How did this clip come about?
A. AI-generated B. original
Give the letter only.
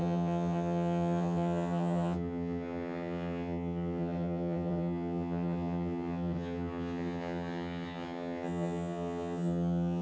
A